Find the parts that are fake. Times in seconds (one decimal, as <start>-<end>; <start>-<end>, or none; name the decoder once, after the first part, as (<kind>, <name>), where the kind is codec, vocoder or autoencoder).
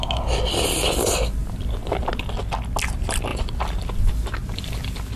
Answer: 1.4-2.0 (vocoder, BigVGAN v2); 3.3-4.1